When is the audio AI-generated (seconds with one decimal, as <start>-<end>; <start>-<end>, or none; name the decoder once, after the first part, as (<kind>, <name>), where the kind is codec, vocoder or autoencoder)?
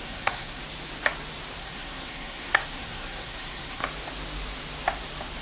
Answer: 0.0-0.6 (codec, SNAC); 1.6-3.8